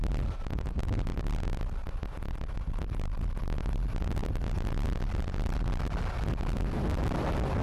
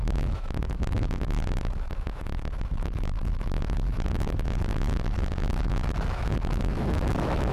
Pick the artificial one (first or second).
second